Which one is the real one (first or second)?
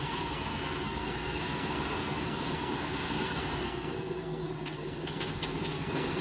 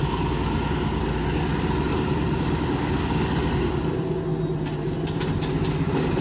second